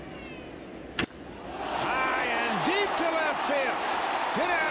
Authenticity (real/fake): real